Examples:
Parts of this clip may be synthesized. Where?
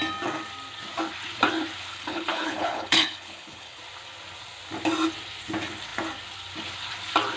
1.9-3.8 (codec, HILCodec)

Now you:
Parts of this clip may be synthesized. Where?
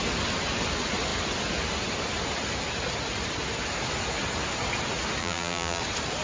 5.2-5.8 (vocoder, BigVGAN v2)